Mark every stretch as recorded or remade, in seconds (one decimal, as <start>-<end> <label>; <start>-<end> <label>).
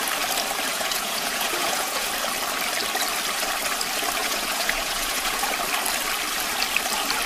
0.0-0.7 recorded; 0.7-2.1 remade; 2.1-4.2 recorded; 4.2-5.4 remade; 5.4-7.3 recorded